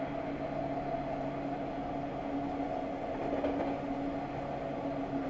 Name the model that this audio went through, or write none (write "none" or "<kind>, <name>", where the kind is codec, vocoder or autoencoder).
none